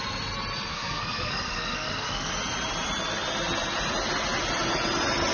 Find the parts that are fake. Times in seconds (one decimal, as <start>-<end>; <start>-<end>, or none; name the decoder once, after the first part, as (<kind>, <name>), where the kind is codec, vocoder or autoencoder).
0.7-2.3 (codec, SNAC)